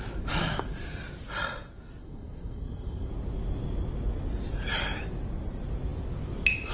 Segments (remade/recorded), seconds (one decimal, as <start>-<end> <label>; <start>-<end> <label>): 0.0-2.0 recorded; 2.0-3.1 remade; 3.1-6.7 recorded